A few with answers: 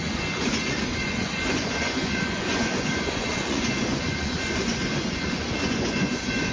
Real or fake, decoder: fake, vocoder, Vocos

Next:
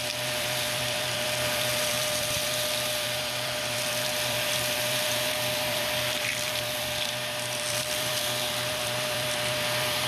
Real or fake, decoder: fake, vocoder, BigVGAN v2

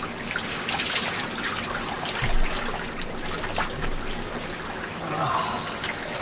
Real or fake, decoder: real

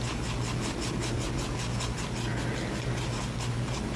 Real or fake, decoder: real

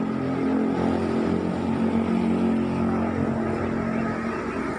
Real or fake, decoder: real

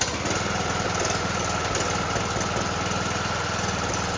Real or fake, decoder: real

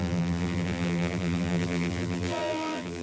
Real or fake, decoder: fake, vocoder, BigVGAN v2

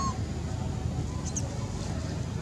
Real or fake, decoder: real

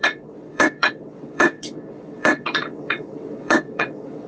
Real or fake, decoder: fake, vocoder, WaveNeXt